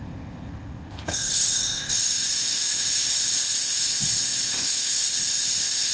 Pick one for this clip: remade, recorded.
remade